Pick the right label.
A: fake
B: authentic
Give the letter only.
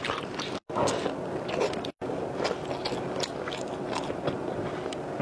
B